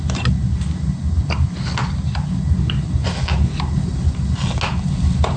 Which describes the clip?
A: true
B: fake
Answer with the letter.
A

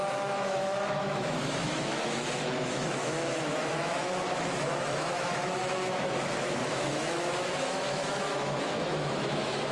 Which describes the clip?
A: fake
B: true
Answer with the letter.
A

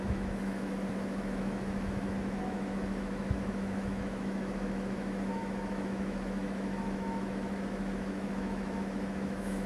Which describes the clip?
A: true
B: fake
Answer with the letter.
B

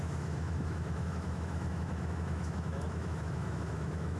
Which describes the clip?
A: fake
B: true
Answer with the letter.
A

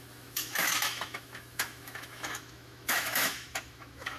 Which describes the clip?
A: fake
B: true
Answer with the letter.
A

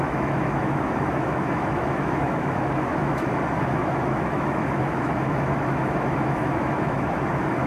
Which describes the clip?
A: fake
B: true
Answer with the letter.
A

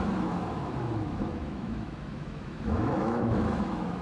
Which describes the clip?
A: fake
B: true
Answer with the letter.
A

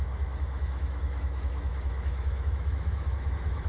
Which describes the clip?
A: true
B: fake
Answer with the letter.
B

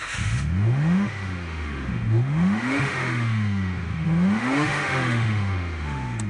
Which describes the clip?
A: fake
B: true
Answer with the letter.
A